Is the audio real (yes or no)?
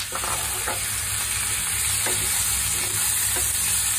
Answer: yes